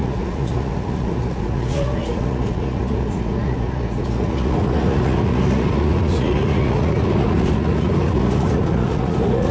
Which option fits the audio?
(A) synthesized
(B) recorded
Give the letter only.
A